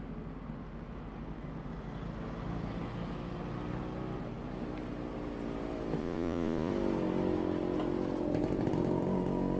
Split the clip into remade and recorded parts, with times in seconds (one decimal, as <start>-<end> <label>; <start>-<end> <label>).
0.0-6.0 recorded; 6.0-6.7 remade; 6.7-9.6 recorded